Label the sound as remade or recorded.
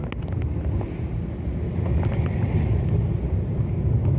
recorded